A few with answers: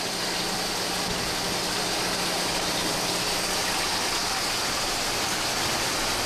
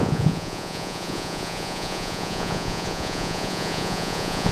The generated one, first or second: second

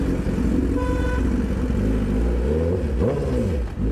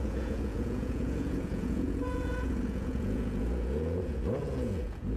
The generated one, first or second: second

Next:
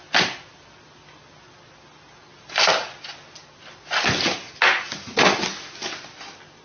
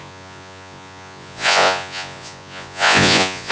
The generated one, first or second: second